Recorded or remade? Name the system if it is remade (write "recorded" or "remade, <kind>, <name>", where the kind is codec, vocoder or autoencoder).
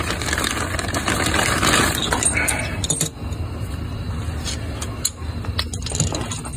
recorded